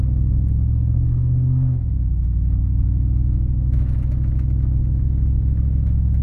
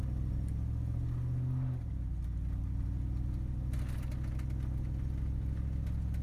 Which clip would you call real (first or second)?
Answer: second